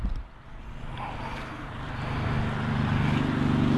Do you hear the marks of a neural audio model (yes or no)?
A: no